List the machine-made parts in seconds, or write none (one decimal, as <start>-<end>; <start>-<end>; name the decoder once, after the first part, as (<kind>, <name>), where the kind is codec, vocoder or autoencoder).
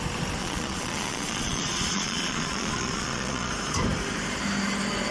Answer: 0.4-3.5 (vocoder, Vocos)